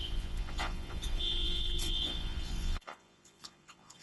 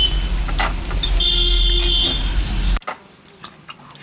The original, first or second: second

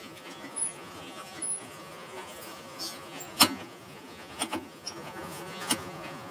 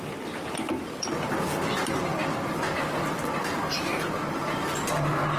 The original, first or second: second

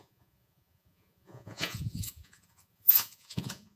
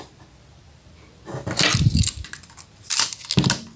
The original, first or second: second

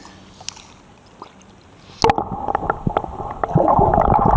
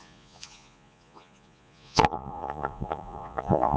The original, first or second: first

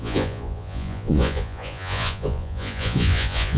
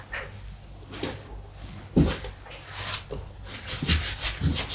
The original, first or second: second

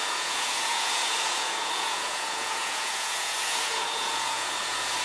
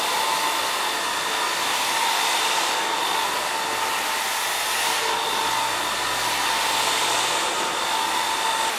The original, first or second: second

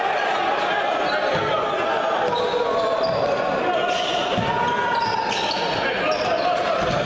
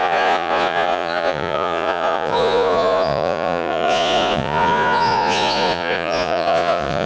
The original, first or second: first